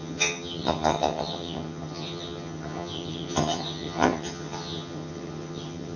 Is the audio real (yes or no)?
no